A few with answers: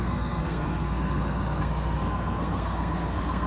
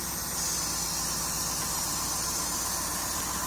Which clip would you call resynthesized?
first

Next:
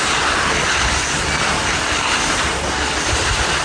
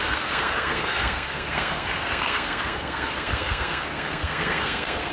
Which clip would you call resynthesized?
second